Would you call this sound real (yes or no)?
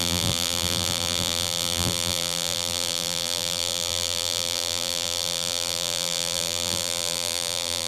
no